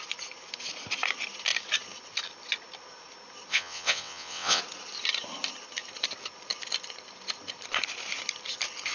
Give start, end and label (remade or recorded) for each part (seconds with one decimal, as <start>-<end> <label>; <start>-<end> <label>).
0.0-3.5 recorded; 3.5-4.6 remade; 4.6-8.9 recorded